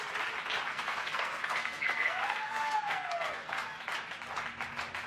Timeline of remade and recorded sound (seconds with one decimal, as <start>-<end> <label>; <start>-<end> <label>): 0.0-0.7 recorded; 0.7-3.8 remade; 3.8-5.1 recorded